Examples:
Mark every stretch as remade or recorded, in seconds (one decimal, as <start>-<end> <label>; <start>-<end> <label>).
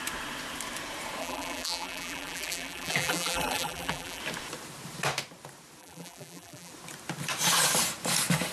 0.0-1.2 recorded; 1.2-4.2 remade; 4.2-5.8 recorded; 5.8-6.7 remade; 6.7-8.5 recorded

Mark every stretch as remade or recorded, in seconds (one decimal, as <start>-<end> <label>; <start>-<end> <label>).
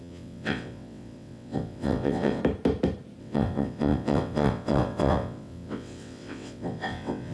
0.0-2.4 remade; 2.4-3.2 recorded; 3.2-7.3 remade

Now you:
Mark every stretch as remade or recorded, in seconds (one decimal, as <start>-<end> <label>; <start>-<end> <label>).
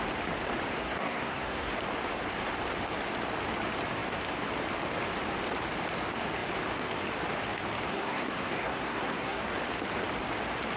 0.0-0.7 recorded; 0.7-1.7 remade; 1.7-7.9 recorded; 7.9-9.4 remade; 9.4-10.8 recorded